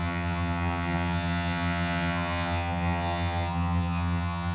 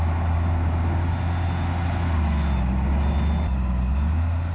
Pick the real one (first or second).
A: second